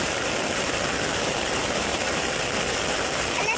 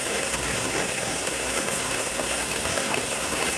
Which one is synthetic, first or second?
second